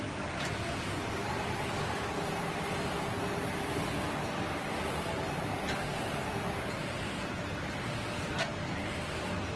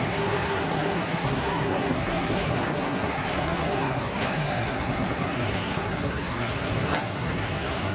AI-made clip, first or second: second